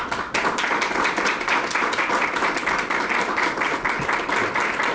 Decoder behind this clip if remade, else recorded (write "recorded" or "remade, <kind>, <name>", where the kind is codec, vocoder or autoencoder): recorded